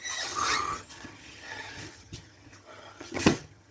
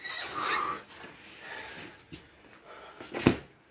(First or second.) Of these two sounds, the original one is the second